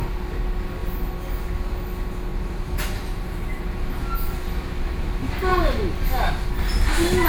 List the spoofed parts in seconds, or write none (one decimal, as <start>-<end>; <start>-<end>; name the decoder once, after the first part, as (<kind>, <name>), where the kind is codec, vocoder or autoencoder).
2.3-4.0 (vocoder, BigVGAN v2)